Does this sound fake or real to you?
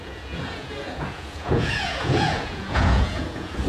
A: fake